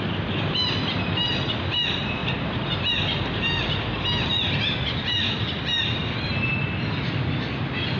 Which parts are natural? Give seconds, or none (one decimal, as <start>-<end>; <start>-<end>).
0.0-8.0